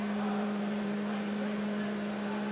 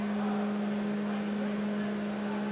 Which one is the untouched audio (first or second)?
second